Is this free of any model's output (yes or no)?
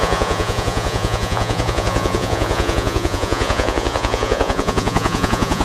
no